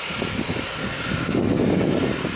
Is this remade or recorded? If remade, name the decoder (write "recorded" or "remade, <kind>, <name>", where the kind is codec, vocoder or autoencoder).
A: recorded